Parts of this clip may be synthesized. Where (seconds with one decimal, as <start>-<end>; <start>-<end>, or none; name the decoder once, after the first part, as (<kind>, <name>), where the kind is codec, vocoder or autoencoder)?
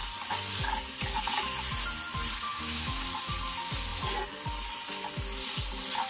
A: 2.5-3.0 (autoencoder, DAC-VAE)